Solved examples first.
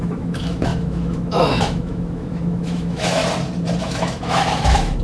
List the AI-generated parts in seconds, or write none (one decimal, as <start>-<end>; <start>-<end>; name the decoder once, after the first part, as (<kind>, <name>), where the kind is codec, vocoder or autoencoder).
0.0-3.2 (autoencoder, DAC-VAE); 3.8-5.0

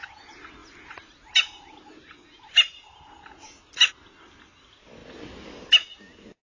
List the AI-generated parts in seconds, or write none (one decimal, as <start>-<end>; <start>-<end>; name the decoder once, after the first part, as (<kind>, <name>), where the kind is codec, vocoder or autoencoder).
none

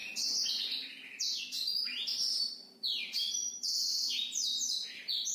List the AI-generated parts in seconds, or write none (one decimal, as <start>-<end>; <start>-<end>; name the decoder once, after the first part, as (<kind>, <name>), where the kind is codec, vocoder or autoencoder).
0.0-0.6 (vocoder, BigVGAN v2); 3.4-4.7

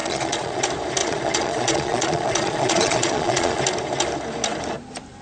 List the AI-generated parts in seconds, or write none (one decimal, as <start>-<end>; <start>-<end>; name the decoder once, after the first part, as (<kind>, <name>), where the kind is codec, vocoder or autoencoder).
0.0-0.6 (vocoder, Vocos); 1.0-3.6

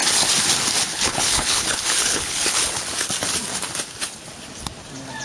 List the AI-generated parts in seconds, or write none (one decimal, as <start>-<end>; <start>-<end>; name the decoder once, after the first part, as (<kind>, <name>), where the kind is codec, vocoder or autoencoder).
0.9-2.8 (codec, HILCodec)

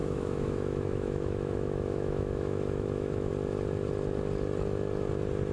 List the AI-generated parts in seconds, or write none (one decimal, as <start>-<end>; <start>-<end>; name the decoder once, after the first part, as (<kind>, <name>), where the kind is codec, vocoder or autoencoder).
0.0-3.3 (autoencoder, DAC-VAE)